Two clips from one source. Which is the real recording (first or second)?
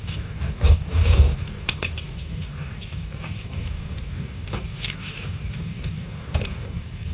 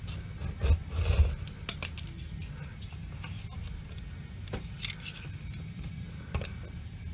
second